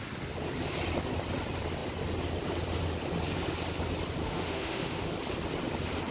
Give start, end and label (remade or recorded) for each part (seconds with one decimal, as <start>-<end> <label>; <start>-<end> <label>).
0.0-4.2 recorded; 4.2-5.1 remade; 5.1-6.1 recorded